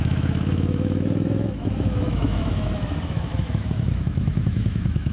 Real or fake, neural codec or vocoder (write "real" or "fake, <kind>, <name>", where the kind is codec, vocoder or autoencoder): fake, autoencoder, DAC-VAE